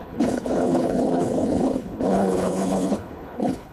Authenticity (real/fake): fake